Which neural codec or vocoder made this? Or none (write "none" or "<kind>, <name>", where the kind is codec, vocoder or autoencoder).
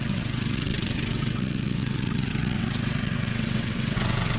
vocoder, WaveNeXt